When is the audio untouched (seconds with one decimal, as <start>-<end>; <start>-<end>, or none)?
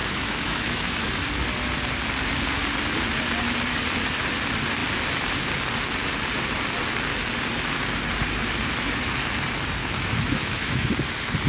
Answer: 1.1-9.8; 10.9-11.5